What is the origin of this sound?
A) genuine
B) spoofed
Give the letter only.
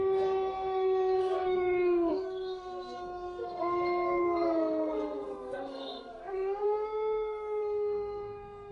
B